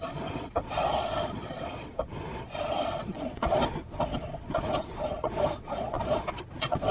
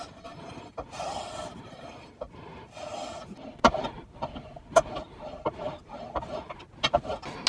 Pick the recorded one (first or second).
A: second